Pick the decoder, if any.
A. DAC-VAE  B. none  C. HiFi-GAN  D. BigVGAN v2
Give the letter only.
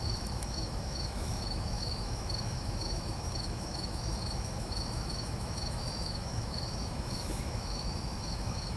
A